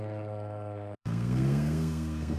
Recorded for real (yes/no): no